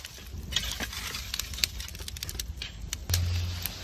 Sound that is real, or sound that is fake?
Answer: real